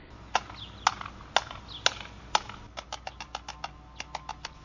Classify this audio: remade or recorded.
recorded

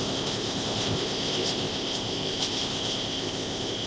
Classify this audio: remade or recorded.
remade